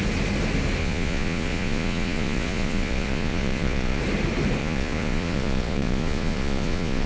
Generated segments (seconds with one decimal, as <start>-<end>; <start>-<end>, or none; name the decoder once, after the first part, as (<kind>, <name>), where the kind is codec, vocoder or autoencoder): 0.8-4.0 (vocoder, Vocos); 4.6-7.1